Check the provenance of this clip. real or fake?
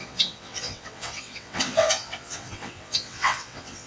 fake